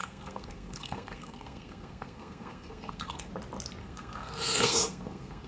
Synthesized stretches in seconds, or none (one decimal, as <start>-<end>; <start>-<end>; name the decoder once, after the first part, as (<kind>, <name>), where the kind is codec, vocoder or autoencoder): 0.0-3.3 (codec, SNAC); 3.8-5.5